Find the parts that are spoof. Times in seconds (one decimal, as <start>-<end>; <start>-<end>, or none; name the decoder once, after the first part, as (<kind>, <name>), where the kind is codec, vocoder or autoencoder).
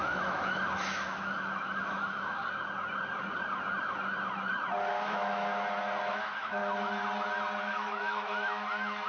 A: 0.0-2.4 (autoencoder, DAC-VAE); 4.9-5.5; 6.1-6.6; 7.6-9.1